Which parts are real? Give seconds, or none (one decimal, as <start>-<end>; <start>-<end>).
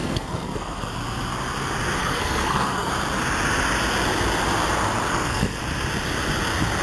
0.9-2.0; 2.9-5.1; 5.6-6.8